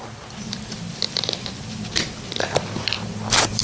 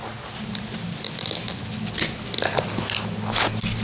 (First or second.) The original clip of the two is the second